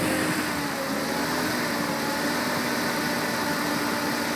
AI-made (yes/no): no